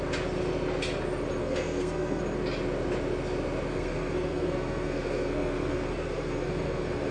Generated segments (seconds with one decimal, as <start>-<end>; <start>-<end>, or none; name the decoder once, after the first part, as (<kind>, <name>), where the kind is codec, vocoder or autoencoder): 1.4-2.2 (codec, SNAC); 3.7-7.1